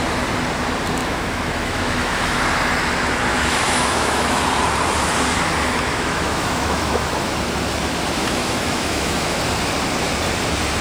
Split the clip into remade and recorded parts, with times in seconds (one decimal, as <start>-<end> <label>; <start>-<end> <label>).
0.0-1.0 recorded; 1.0-2.4 remade; 2.4-3.3 recorded; 3.3-4.4 remade; 4.4-5.9 recorded; 5.9-7.3 remade; 7.3-8.2 recorded; 8.2-9.4 remade; 9.4-10.8 recorded